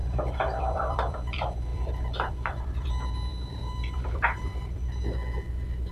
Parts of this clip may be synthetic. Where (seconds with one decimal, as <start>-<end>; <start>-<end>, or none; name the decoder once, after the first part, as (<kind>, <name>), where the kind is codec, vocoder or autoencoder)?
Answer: 0.0-5.0 (vocoder, BigVGAN v2)